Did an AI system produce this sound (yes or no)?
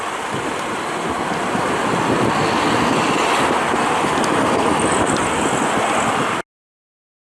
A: no